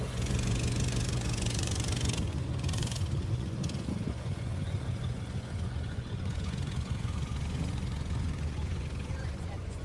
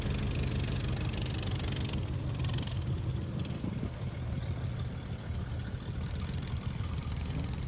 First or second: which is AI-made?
first